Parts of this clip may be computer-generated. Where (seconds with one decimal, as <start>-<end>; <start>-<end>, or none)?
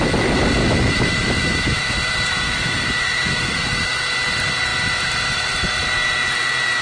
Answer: 0.6-4.0